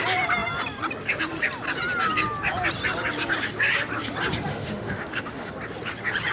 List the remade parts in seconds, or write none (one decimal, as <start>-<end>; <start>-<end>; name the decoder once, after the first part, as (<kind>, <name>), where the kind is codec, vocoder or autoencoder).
4.5-5.5 (autoencoder, DAC-VAE)